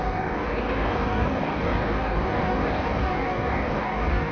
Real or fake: fake